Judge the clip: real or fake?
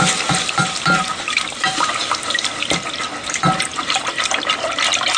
real